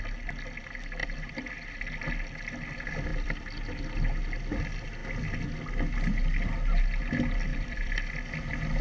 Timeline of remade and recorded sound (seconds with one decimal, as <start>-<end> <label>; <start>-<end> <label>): 0.0-1.0 recorded; 1.0-1.5 remade; 1.5-3.1 recorded; 3.1-3.8 remade; 3.8-7.5 recorded; 7.5-8.3 remade; 8.3-8.8 recorded